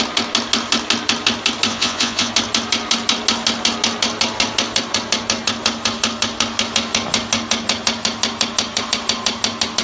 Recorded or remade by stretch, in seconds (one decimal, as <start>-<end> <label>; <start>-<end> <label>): 0.0-1.7 recorded; 1.7-2.3 remade; 2.3-9.8 recorded